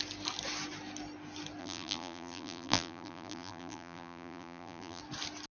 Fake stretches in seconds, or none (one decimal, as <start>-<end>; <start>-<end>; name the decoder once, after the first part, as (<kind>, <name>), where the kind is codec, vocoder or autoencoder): 1.6-5.0 (vocoder, BigVGAN v2)